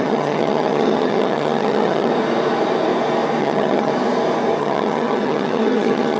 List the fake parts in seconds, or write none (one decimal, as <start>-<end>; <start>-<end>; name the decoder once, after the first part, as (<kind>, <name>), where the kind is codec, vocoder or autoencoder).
0.0-2.1 (vocoder, HiFi-GAN); 3.4-3.9; 4.6-6.2